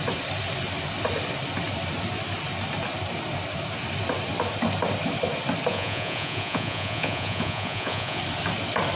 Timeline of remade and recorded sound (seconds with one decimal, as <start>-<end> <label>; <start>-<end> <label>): 0.0-5.7 recorded; 5.7-8.2 remade; 8.2-9.0 recorded